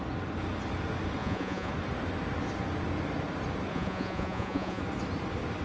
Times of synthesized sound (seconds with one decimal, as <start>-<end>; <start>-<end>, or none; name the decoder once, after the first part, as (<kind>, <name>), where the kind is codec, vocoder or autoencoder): 1.2-1.7 (vocoder, Vocos); 3.7-4.8